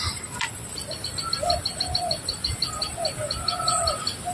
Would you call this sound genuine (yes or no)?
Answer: yes